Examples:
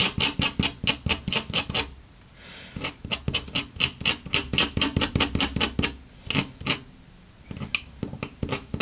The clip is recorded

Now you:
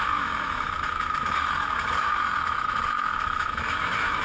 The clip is remade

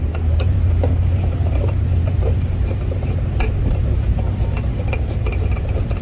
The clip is remade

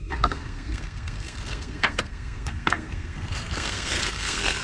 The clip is remade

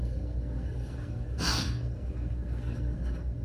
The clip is remade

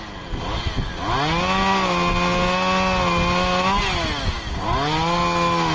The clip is recorded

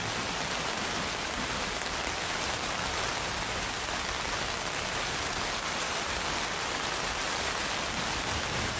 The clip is recorded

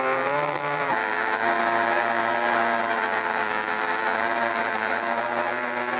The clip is remade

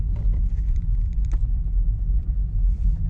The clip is remade